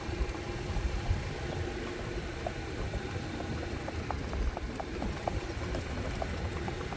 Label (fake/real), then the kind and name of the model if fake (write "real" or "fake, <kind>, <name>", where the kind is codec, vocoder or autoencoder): real